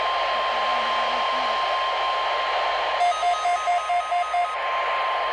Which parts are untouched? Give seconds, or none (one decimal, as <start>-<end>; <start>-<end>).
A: 0.0-0.7; 1.3-5.3